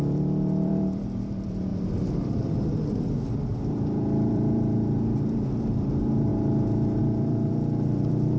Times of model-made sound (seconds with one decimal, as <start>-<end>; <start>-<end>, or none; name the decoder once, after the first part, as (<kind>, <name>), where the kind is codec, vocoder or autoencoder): 0.0-6.3 (vocoder, BigVGAN v2); 7.0-8.4

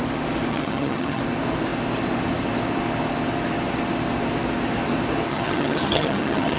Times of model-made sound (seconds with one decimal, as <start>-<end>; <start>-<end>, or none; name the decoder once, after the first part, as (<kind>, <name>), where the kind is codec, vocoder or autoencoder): 0.5-1.2 (vocoder, HiFi-GAN); 5.3-6.6

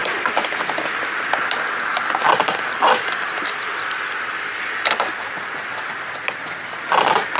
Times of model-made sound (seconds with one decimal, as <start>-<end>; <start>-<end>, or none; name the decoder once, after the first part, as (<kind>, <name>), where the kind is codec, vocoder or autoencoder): none

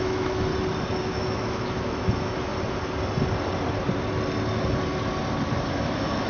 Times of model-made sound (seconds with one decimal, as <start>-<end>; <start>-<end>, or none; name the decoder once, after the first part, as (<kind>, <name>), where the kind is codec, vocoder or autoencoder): 0.0-0.5 (autoencoder, DAC-VAE); 1.0-2.5; 5.7-6.3

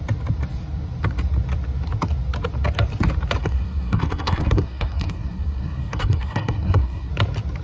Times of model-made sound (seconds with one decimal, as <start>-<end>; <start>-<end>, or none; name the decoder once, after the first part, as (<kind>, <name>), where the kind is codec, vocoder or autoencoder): 3.4-7.1 (codec, SNAC)

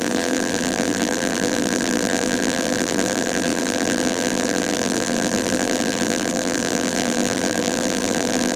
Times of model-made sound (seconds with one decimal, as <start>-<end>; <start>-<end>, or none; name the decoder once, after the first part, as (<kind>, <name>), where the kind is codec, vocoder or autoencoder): 0.0-8.6 (vocoder, BigVGAN v2)